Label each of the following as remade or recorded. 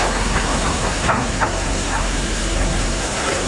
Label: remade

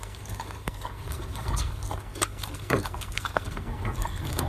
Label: remade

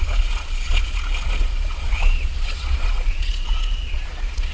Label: remade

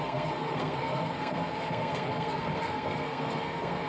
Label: remade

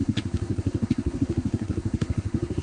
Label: remade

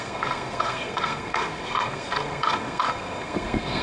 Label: remade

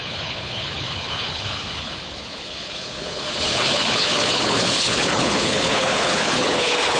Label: remade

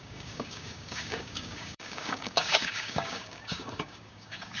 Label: remade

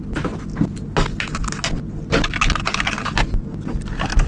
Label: recorded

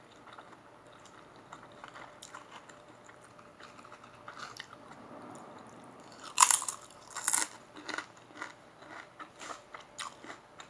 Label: recorded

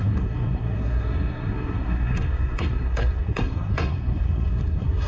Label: remade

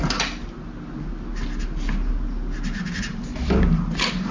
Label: recorded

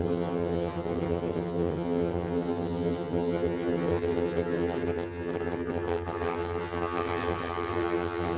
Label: remade